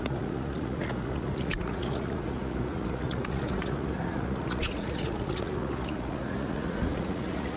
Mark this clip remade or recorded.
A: remade